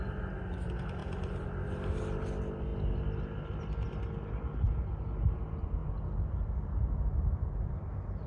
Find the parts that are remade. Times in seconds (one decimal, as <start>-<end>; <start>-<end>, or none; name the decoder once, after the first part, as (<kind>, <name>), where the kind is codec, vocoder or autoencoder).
none